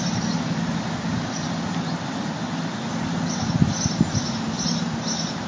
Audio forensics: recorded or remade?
recorded